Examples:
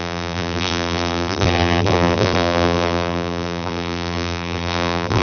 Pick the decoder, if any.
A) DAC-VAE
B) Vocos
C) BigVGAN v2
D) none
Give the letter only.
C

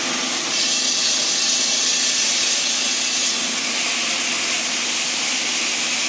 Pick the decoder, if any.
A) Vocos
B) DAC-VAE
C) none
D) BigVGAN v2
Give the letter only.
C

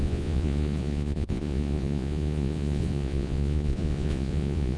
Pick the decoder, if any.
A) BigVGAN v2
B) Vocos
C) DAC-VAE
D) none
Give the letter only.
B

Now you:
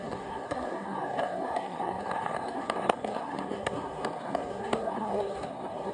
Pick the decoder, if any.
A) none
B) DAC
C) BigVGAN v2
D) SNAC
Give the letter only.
D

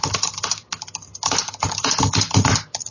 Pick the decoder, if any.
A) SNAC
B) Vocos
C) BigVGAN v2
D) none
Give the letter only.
D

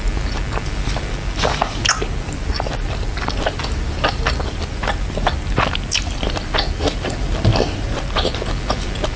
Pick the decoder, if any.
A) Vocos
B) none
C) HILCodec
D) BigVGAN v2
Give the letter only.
B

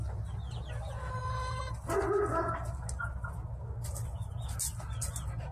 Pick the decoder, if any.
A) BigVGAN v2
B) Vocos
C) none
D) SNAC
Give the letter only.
C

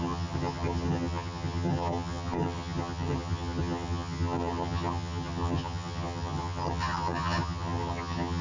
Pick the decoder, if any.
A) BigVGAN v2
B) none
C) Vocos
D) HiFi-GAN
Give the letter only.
D